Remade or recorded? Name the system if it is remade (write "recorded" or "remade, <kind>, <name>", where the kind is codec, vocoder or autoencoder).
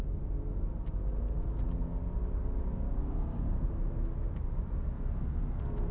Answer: recorded